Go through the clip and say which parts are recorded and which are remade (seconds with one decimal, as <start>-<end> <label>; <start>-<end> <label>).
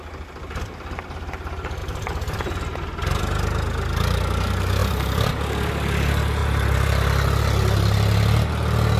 0.0-1.8 recorded; 1.8-3.2 remade; 3.2-4.8 recorded; 4.8-5.3 remade; 5.3-6.4 recorded; 6.4-7.4 remade; 7.4-9.0 recorded